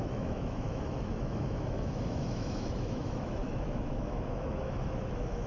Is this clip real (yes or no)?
no